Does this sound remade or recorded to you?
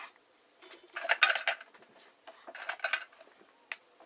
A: recorded